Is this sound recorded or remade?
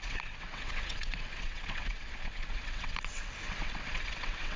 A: remade